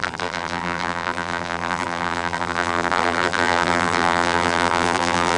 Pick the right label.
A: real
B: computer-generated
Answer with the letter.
B